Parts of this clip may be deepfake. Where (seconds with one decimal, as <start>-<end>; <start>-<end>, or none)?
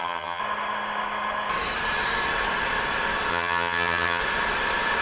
0.0-0.4; 3.3-4.2